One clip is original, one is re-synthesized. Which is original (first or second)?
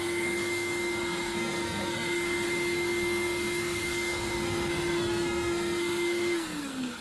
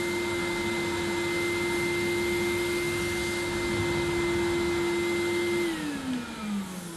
second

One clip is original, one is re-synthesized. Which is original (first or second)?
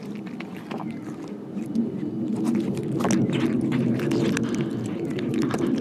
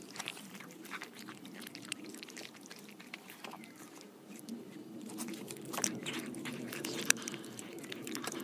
first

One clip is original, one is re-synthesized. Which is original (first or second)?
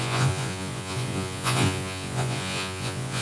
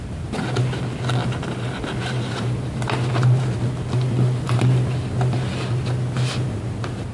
second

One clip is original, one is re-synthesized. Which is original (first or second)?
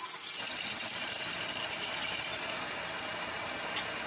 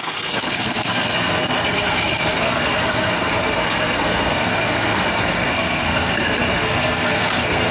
first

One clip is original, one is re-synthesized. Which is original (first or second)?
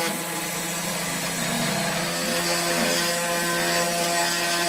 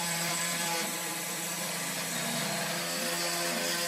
first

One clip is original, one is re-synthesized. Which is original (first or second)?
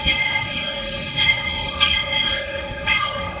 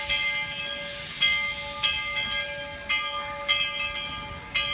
second